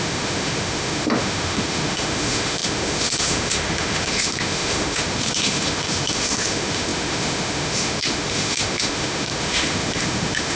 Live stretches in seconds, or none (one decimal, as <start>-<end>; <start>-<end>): none